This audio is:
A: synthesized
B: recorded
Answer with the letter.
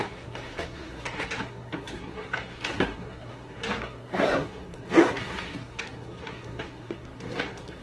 A